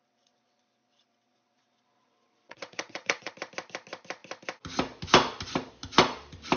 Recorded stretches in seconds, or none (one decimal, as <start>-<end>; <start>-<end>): 3.3-6.6